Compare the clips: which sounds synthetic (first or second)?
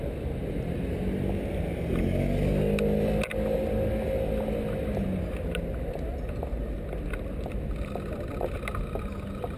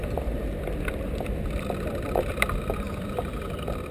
second